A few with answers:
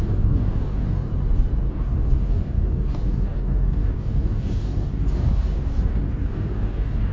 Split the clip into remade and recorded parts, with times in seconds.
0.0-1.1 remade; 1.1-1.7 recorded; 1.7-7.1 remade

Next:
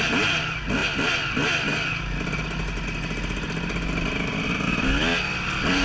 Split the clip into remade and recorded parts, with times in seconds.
0.0-5.8 recorded

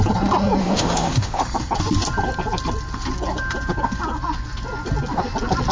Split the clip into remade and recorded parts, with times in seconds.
0.0-0.6 recorded; 0.6-1.4 remade; 1.4-5.7 recorded

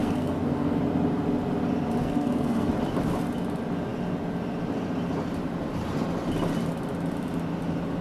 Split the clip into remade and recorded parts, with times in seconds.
0.0-0.8 remade; 0.8-2.0 recorded; 2.0-2.7 remade; 2.7-8.0 recorded

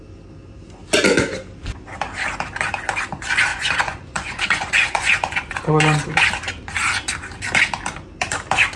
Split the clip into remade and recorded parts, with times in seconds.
0.0-3.5 recorded; 3.5-5.7 remade; 5.7-8.8 recorded

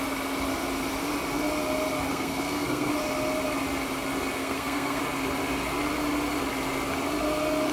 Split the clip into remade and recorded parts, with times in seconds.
0.0-2.1 recorded; 2.1-2.9 remade; 2.9-4.4 recorded; 4.4-5.0 remade; 5.0-7.7 recorded

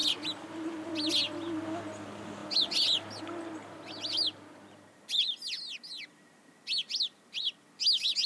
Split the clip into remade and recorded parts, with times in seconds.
0.0-8.3 recorded

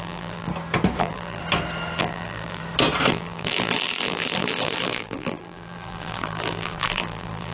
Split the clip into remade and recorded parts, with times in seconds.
0.0-0.5 remade; 0.5-1.0 recorded; 1.0-1.4 remade; 1.4-2.0 recorded; 2.0-2.6 remade; 2.6-3.1 recorded; 3.1-7.5 remade